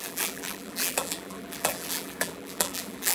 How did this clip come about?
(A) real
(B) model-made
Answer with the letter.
B